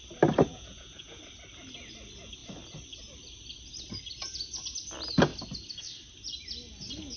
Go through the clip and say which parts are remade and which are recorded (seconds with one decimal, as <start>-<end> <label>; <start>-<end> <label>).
0.0-0.5 recorded; 0.5-1.2 remade; 1.2-7.2 recorded